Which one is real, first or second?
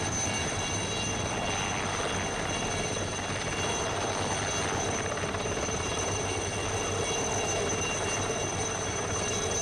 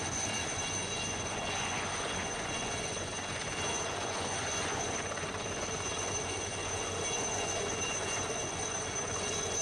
first